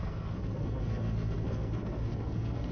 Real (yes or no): no